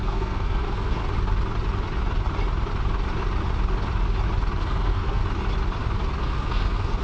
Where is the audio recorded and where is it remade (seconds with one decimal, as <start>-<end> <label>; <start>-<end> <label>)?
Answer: 0.0-1.0 remade; 1.0-4.6 recorded; 4.6-5.2 remade; 5.2-6.2 recorded; 6.2-7.0 remade